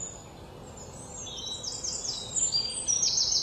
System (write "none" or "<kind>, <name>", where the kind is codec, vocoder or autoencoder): none